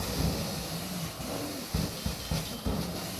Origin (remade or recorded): recorded